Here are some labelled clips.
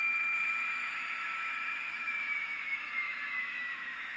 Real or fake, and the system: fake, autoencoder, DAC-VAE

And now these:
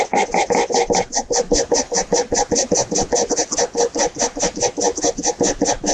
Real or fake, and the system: real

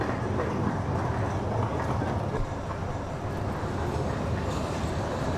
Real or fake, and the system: real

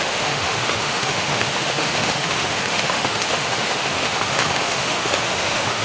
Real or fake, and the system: fake, autoencoder, DAC-VAE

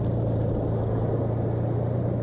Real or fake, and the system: real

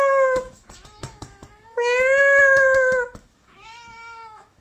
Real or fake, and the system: fake, autoencoder, DAC-VAE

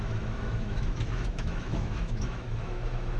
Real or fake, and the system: fake, autoencoder, DAC-VAE